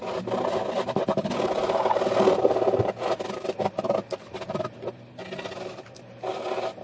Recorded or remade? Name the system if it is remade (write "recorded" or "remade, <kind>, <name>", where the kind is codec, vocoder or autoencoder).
recorded